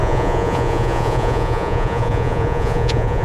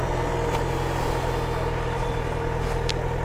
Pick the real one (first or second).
second